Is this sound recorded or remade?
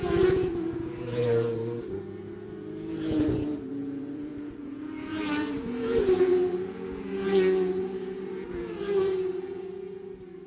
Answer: remade